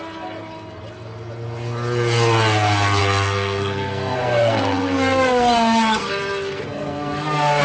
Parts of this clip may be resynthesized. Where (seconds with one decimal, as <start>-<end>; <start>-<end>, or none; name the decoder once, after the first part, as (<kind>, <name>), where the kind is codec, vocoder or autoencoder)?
3.0-7.6 (codec, SNAC)